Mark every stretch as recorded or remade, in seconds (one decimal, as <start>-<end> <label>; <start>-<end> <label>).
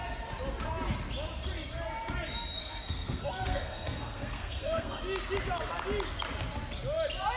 0.0-2.6 recorded; 2.6-5.0 remade; 5.0-7.4 recorded